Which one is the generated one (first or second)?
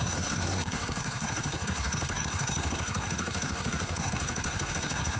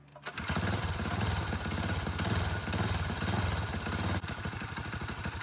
first